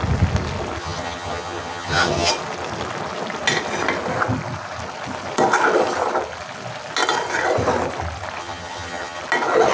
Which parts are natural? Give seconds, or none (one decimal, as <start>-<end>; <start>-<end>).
0.0-0.8; 2.3-8.4; 9.2-9.7